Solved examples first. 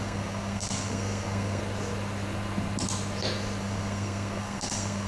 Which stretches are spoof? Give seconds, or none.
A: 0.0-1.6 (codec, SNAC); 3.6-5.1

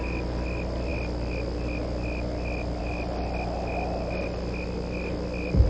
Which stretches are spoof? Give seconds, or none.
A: none

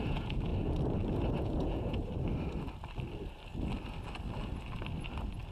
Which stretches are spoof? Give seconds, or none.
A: 0.0-0.5 (vocoder, Vocos); 1.4-2.0

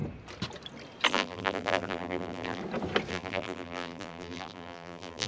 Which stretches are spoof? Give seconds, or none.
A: 1.1-2.6 (vocoder, BigVGAN v2); 3.1-5.3

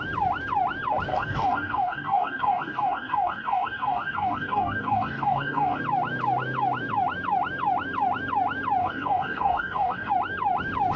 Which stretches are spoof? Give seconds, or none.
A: 1.1-5.8 (codec, DAC); 8.8-10.1

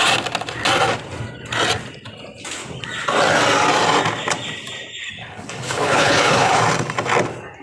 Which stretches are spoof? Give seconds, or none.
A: 5.0-6.6 (codec, HILCodec)

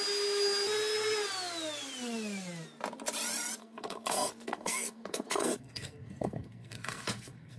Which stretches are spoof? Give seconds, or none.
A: 3.6-7.6 (codec, SNAC)

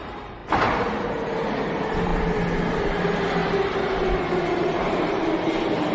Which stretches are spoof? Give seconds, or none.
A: 0.0-2.1 (vocoder, BigVGAN v2); 2.9-3.4; 4.5-5.9